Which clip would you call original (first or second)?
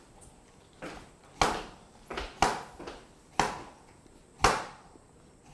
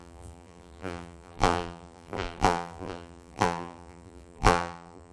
first